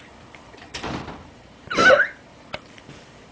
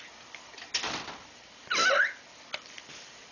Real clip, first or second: second